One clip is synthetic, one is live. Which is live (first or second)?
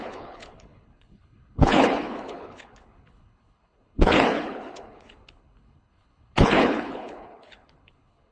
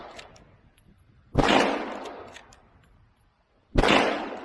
second